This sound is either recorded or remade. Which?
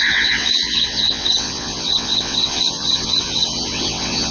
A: remade